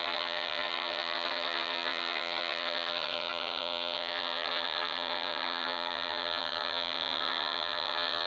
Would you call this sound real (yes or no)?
no